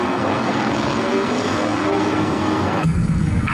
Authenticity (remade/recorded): remade